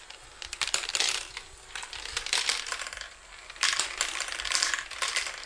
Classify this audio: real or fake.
fake